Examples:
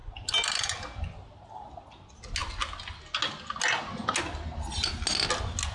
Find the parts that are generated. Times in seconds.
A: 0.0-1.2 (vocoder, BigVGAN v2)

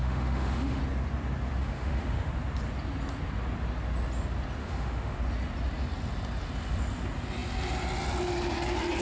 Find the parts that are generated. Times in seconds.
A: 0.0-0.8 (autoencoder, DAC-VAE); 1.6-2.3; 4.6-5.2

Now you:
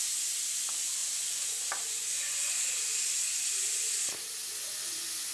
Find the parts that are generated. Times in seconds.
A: 1.0-2.5 (vocoder, Vocos)

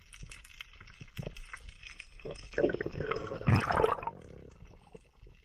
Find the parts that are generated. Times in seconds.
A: 1.8-3.5 (codec, SNAC)

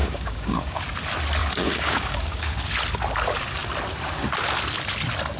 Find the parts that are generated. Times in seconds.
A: 0.0-0.8 (codec, DAC); 1.4-2.6

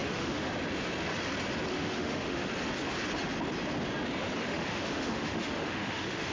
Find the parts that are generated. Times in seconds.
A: 0.0-0.5 (autoencoder, DAC-VAE); 1.7-2.5; 4.4-6.3

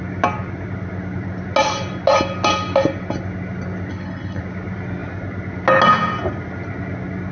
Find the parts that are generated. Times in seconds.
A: 3.9-4.4 (codec, HILCodec)